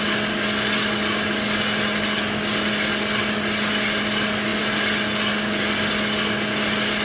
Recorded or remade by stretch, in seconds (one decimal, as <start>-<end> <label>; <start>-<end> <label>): 0.0-7.0 recorded